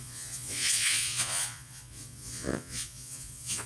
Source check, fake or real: fake